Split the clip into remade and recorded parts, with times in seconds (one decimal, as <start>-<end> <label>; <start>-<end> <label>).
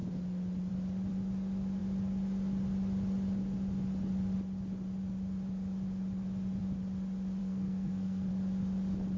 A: 0.0-7.4 recorded; 7.4-8.3 remade; 8.3-9.2 recorded